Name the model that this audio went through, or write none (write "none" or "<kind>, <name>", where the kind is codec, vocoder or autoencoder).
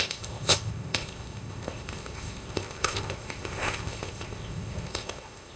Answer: codec, ZipCodec